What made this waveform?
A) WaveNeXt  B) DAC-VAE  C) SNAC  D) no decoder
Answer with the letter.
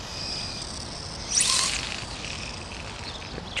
D